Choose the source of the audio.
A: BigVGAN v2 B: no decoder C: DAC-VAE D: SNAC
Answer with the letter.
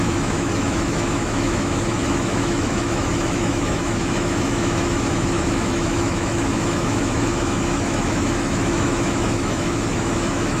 C